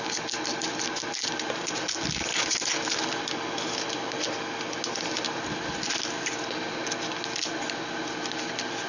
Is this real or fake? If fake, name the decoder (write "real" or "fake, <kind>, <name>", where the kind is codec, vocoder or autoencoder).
real